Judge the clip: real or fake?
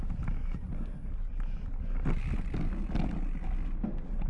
real